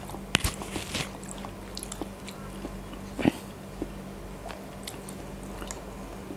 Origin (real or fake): real